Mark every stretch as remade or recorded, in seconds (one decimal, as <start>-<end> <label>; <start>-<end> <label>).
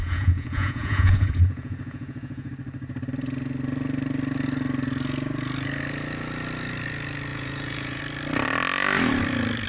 0.0-2.5 remade; 2.5-7.3 recorded; 7.3-8.0 remade; 8.0-9.7 recorded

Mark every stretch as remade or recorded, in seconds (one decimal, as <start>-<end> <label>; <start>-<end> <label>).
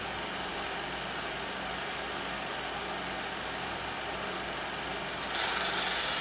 0.0-6.2 recorded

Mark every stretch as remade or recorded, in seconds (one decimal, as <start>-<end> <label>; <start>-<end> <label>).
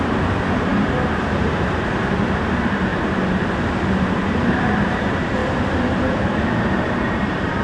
0.0-7.6 remade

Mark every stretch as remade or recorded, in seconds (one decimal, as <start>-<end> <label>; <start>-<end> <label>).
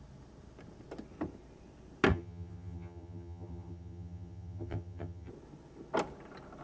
0.0-2.1 recorded; 2.1-5.3 remade; 5.3-6.6 recorded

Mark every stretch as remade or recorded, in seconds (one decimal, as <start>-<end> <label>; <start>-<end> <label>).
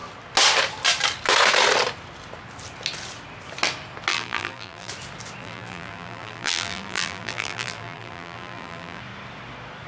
0.0-4.1 recorded; 4.1-4.9 remade; 4.9-5.4 recorded; 5.4-9.0 remade; 9.0-9.9 recorded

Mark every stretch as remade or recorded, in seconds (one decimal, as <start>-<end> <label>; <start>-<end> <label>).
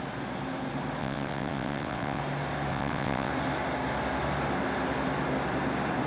0.0-1.0 recorded; 1.0-2.2 remade; 2.2-2.7 recorded; 2.7-3.3 remade; 3.3-6.1 recorded